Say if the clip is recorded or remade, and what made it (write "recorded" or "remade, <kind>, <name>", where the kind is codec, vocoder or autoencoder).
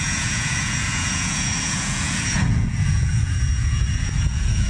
remade, vocoder, Vocos